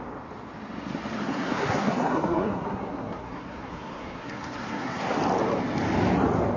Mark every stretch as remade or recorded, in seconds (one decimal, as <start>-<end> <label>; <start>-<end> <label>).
0.0-1.2 recorded; 1.2-5.2 remade; 5.2-6.6 recorded